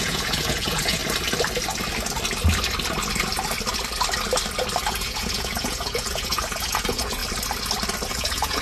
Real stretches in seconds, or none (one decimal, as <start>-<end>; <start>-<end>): 1.0-4.9; 7.2-8.1